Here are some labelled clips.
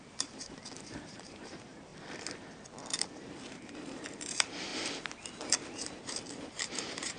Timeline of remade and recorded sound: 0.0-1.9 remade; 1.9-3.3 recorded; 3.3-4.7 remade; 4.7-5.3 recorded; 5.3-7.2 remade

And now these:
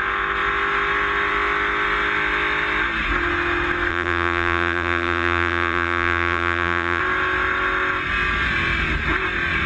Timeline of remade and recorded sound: 0.0-3.9 recorded; 3.9-7.0 remade; 7.0-9.7 recorded

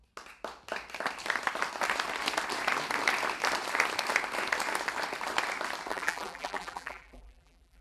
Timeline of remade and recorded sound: 0.0-5.9 recorded; 5.9-7.8 remade

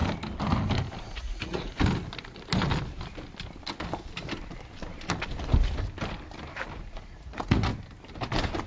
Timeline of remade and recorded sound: 0.0-1.0 recorded; 1.0-1.7 remade; 1.7-6.8 recorded; 6.8-7.7 remade; 7.7-8.7 recorded

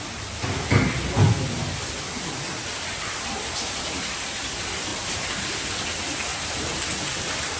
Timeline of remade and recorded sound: 0.0-4.9 recorded; 4.9-5.5 remade; 5.5-6.3 recorded; 6.3-6.8 remade; 6.8-7.6 recorded

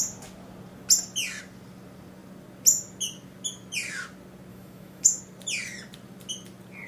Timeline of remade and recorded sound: 0.0-4.5 recorded; 4.5-5.2 remade; 5.2-6.9 recorded

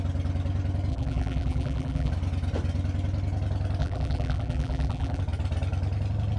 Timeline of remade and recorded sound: 0.0-0.9 recorded; 0.9-2.1 remade; 2.1-3.8 recorded; 3.8-5.2 remade; 5.2-6.4 recorded